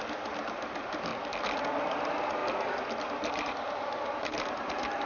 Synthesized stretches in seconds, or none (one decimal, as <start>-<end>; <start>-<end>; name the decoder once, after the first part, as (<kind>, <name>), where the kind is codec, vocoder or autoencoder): 0.0-1.1 (vocoder, BigVGAN v2); 1.8-2.4; 3.0-5.1